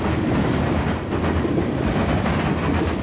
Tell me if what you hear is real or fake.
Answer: real